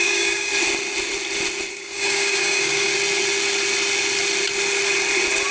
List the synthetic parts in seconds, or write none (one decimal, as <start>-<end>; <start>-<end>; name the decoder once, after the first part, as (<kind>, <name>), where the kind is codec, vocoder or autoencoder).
0.0-0.5 (codec, DAC); 1.7-2.9